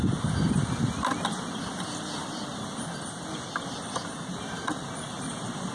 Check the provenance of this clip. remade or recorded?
recorded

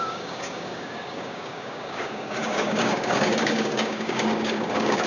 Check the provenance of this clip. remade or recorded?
remade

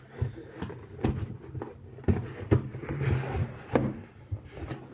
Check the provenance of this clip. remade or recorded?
recorded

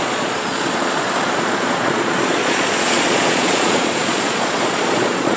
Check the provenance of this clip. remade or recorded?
remade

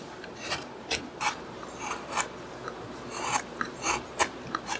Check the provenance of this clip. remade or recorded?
remade